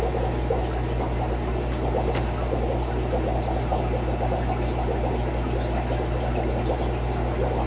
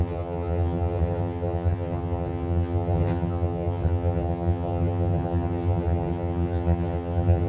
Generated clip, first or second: second